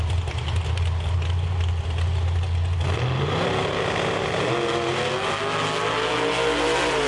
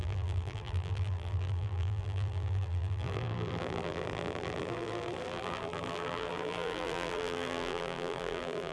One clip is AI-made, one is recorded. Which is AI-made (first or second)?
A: second